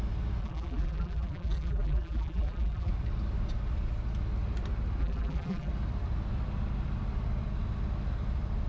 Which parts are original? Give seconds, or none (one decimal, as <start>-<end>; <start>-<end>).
0.0-0.4; 2.9-5.0; 5.7-8.7